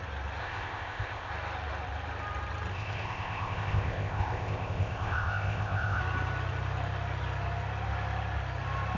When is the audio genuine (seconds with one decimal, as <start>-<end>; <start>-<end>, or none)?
0.0-0.4; 1.3-2.7; 6.0-9.0